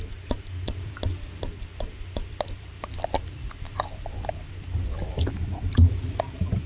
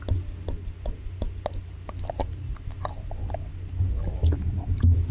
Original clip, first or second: second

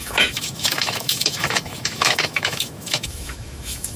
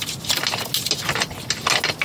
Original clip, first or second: second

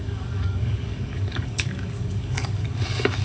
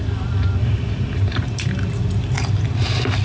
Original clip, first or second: second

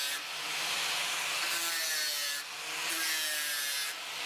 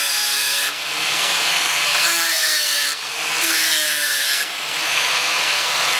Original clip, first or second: first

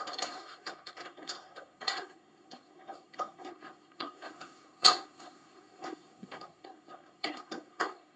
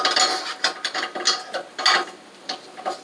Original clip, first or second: second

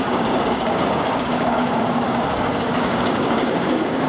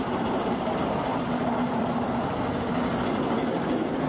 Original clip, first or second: second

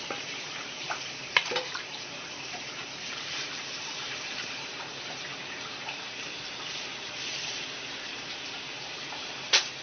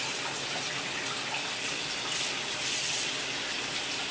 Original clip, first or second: second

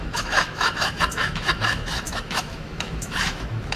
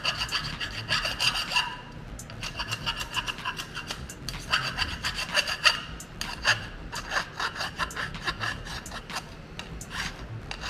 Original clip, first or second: second